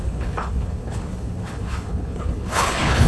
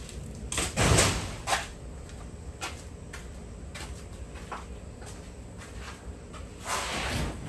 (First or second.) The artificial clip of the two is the first